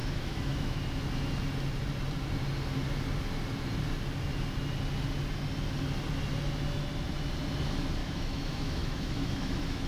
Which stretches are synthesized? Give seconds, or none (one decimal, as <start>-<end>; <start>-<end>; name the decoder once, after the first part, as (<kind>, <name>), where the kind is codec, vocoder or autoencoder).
0.0-0.8 (autoencoder, DAC-VAE); 8.0-9.9